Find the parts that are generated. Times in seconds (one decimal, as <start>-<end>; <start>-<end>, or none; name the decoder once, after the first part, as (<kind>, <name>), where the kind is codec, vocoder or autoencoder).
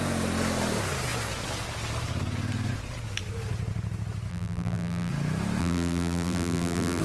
4.3-5.1 (vocoder, BigVGAN v2); 5.6-7.0